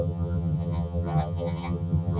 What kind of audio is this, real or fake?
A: fake